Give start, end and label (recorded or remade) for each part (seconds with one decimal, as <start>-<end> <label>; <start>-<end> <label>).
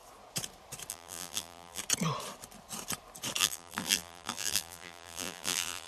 0.0-0.9 recorded; 0.9-1.8 remade; 1.8-3.4 recorded; 3.4-5.9 remade